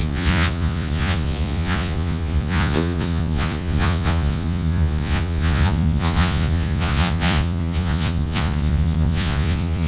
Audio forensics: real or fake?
fake